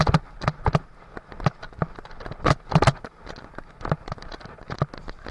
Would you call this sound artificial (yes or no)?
no